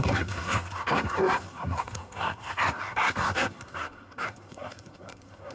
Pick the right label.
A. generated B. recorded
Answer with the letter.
A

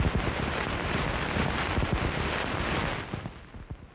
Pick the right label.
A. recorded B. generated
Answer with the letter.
A